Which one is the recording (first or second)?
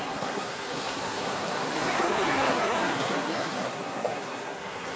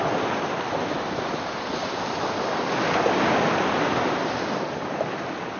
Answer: second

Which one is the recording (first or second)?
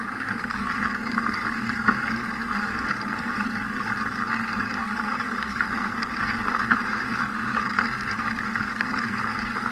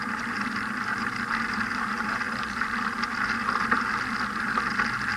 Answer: second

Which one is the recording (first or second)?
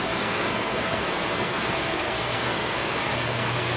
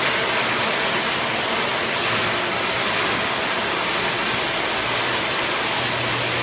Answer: second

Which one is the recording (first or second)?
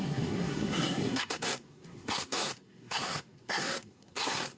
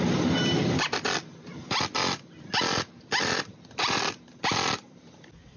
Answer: second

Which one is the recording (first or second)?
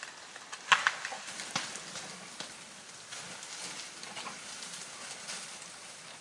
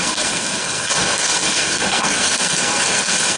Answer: first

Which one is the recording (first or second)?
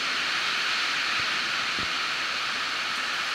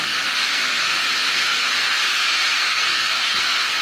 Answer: first